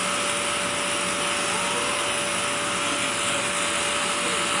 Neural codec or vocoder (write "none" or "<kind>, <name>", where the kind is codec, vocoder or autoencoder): none